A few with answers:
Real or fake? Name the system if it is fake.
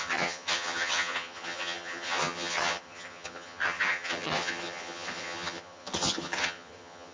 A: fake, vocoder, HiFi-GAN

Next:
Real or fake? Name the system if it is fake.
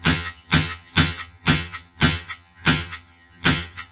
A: fake, vocoder, HiFi-GAN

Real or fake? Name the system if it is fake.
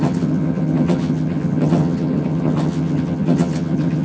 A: fake, vocoder, HiFi-GAN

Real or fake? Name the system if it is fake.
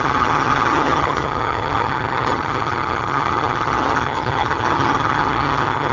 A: fake, vocoder, HiFi-GAN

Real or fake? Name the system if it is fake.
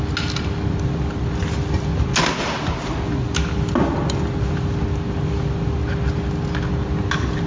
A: real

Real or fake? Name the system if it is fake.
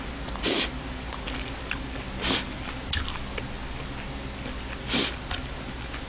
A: real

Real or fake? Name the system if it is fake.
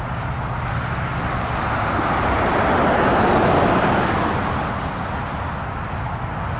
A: real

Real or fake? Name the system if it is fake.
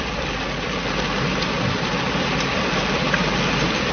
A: real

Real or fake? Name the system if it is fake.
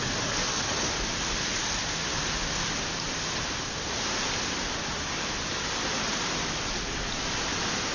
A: real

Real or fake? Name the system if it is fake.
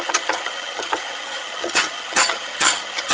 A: fake, vocoder, HiFi-GAN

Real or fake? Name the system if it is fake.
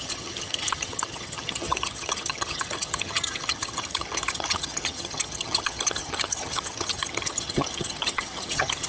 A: fake, vocoder, HiFi-GAN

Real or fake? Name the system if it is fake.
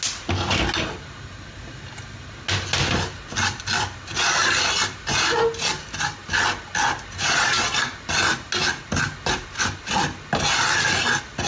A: real